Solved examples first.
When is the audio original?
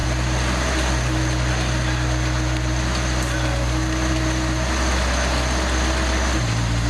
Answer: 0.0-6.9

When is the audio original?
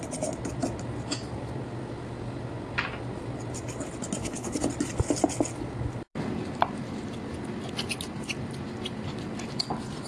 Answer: 0.0-4.2; 4.7-10.1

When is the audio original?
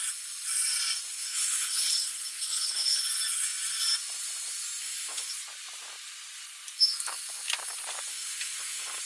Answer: 0.0-1.1; 3.0-4.8; 5.3-8.1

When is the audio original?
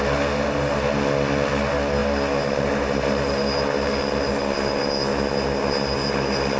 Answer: 0.0-6.6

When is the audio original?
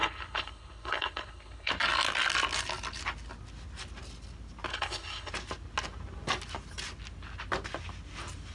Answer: 1.7-4.7; 5.3-8.5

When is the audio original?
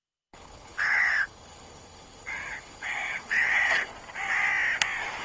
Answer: 3.9-5.2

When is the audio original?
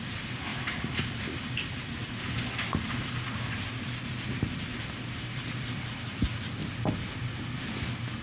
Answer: 0.0-8.2